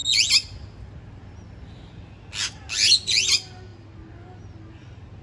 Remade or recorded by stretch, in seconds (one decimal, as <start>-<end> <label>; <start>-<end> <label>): 0.0-5.2 recorded